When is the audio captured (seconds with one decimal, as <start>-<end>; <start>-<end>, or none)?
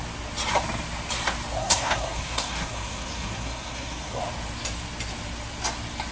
0.0-1.6; 4.2-6.1